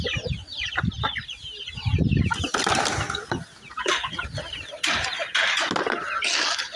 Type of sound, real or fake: real